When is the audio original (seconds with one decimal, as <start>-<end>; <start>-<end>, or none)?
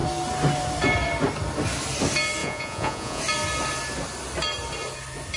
0.0-2.4; 3.2-5.4